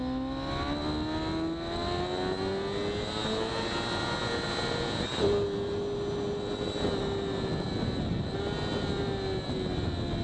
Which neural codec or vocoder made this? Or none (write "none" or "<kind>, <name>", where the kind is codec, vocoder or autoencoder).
none